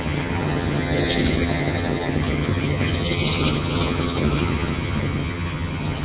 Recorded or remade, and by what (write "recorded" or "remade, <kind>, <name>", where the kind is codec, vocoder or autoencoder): remade, vocoder, HiFi-GAN